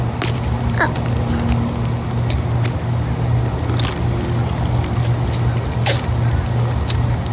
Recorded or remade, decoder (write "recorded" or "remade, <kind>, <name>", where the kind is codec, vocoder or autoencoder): recorded